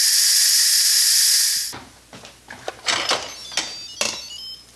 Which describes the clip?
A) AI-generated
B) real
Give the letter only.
B